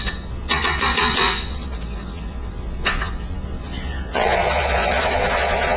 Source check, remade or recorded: remade